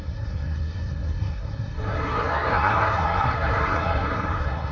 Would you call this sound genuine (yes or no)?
no